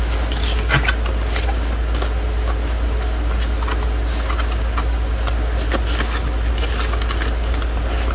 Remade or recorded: recorded